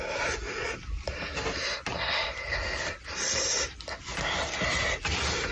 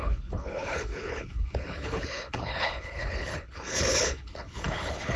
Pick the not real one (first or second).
second